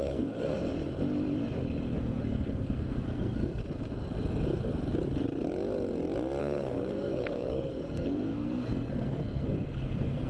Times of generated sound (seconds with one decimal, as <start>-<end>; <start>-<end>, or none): 0.0-0.5; 2.0-3.6; 6.4-10.3